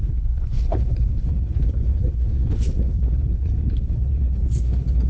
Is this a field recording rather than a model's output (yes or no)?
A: no